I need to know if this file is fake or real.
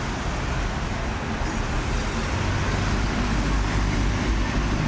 real